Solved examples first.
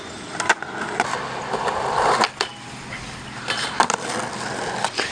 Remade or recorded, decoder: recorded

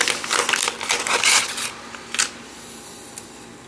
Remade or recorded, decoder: recorded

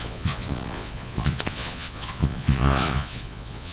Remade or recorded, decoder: remade, vocoder, Vocos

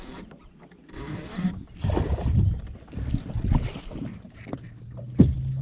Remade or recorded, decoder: recorded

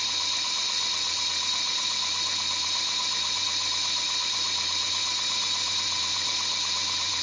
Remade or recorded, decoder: remade, vocoder, Vocos